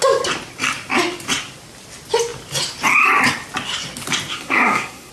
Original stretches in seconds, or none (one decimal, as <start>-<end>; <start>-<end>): 0.0-4.3